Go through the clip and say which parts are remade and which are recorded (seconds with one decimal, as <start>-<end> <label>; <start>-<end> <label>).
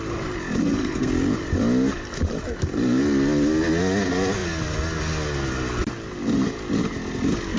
0.0-0.6 recorded; 0.6-1.1 remade; 1.1-7.6 recorded